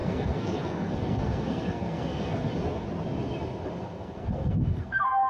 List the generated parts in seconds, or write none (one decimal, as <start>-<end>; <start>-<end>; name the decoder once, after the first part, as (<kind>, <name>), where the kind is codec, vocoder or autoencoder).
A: 0.0-2.5 (codec, SNAC); 3.8-5.3